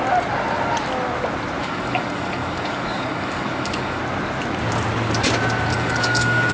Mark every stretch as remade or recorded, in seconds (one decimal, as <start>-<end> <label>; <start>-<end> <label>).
0.0-1.6 recorded; 1.6-4.0 remade; 4.0-5.7 recorded; 5.7-6.5 remade